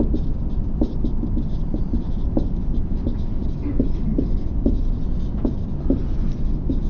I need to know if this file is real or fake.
real